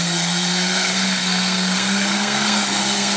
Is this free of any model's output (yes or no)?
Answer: no